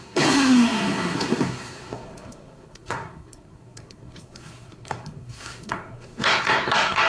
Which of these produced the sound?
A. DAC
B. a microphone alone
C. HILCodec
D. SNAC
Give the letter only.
D